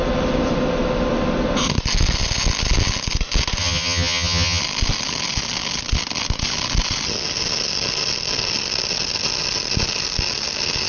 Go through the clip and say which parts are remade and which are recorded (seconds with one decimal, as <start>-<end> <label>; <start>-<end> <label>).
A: 0.0-3.6 recorded; 3.6-4.6 remade; 4.6-10.9 recorded